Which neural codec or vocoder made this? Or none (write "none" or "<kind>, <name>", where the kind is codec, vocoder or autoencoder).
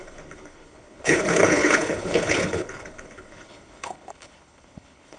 codec, HILCodec